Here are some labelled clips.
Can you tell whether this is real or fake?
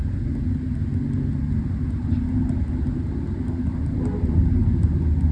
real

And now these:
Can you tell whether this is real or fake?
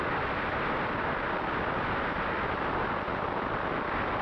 real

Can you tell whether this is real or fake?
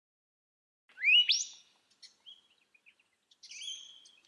real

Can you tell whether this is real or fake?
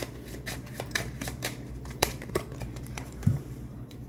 fake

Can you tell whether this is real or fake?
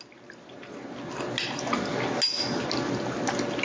real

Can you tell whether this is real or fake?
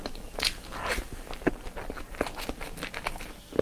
real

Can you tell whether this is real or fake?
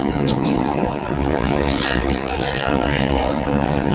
fake